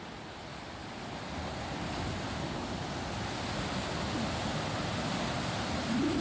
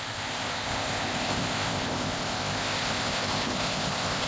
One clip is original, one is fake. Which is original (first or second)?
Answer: first